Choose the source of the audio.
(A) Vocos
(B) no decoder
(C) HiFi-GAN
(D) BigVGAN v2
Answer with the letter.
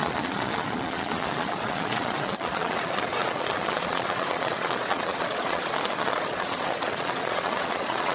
A